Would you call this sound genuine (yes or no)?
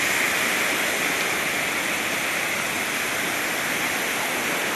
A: yes